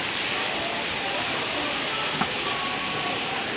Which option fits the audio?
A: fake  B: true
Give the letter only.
B